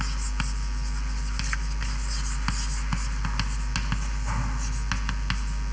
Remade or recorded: recorded